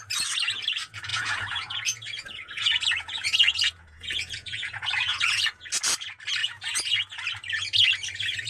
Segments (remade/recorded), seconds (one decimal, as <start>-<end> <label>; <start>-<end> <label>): 0.0-1.1 recorded; 1.1-5.7 remade; 5.7-6.4 recorded; 6.4-7.2 remade; 7.2-8.5 recorded